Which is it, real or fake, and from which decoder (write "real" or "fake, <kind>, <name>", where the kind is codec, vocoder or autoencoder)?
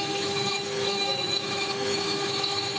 fake, autoencoder, DAC-VAE